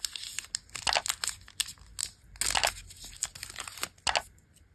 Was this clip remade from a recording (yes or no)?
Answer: no